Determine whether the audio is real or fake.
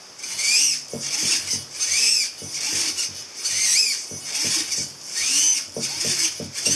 real